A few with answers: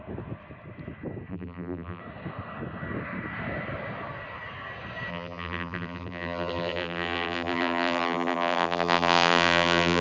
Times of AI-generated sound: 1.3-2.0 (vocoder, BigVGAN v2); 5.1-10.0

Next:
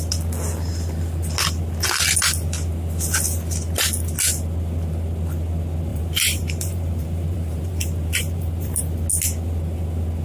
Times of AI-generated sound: 5.9-8.8 (vocoder, BigVGAN v2)

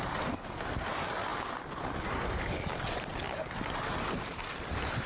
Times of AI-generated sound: none

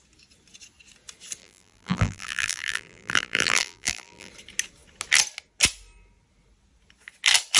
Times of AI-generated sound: 1.4-4.3 (vocoder, BigVGAN v2)

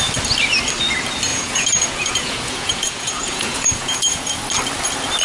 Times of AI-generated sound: 1.3-4.4 (vocoder, Vocos)

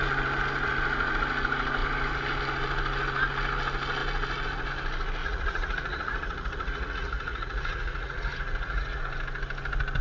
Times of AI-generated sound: 5.2-9.0 (vocoder, Vocos)

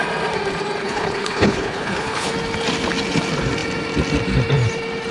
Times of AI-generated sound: 0.8-2.3 (codec, HILCodec)